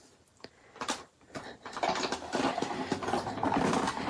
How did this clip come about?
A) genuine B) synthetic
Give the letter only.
B